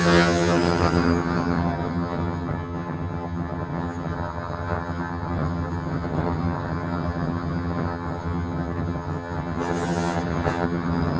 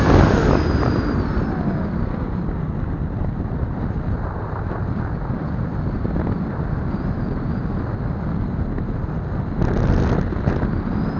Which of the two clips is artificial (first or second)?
first